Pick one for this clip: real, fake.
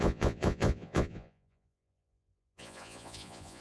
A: fake